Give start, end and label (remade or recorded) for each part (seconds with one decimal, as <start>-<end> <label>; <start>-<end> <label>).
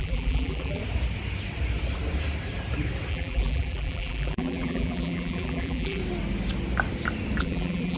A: 0.0-0.8 remade; 0.8-3.1 recorded; 3.1-6.0 remade; 6.0-7.4 recorded; 7.4-8.0 remade